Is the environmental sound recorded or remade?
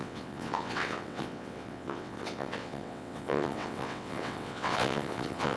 remade